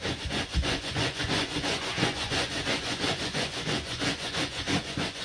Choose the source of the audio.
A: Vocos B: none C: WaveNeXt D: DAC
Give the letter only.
A